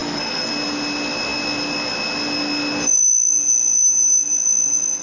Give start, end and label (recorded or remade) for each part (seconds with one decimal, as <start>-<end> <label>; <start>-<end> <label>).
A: 0.0-0.5 remade; 0.5-5.0 recorded